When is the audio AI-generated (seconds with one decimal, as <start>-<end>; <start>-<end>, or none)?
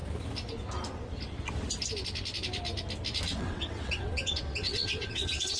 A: 3.4-5.6